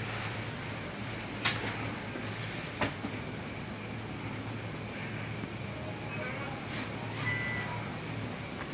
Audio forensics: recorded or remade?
recorded